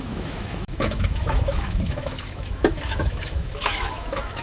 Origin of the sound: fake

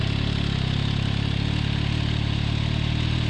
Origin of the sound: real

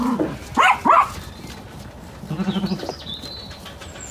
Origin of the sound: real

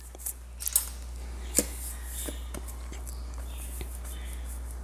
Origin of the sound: real